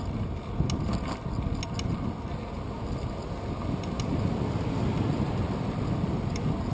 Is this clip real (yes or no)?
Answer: yes